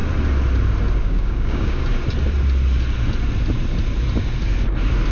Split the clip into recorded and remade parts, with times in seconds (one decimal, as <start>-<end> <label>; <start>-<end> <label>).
0.0-1.0 recorded; 1.0-1.8 remade; 1.8-5.1 recorded